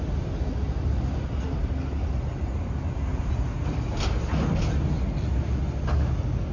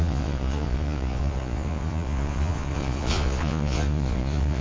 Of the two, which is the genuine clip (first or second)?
first